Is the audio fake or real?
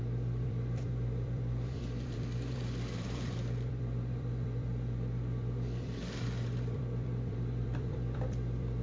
fake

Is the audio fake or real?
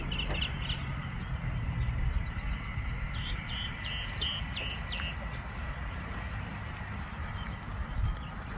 real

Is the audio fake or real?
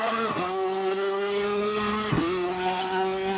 fake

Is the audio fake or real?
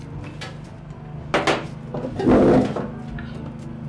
real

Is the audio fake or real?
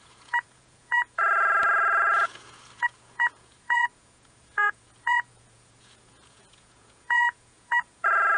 fake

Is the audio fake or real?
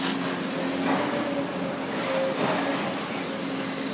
real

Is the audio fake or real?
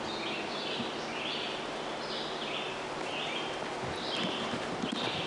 real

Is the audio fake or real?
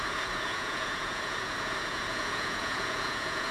fake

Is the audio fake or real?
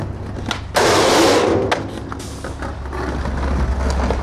real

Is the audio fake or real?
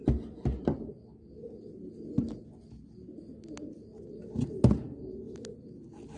real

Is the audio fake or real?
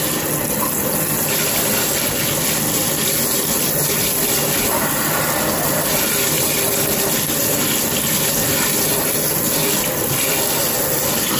real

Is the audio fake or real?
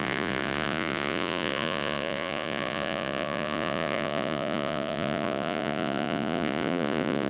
fake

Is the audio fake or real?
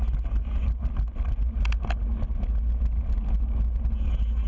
real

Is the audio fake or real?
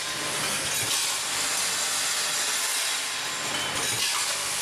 real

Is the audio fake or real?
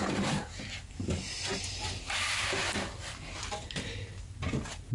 real